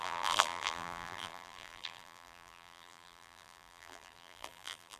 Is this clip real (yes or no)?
no